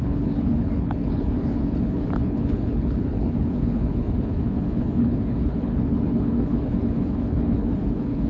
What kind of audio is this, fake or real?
fake